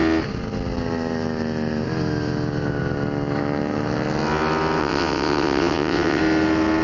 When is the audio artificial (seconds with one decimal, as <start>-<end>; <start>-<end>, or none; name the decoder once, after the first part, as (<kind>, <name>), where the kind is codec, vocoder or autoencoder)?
4.8-6.2 (vocoder, WaveNeXt)